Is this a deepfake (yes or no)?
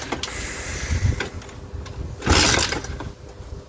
no